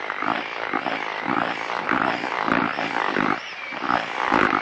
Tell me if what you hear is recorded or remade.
recorded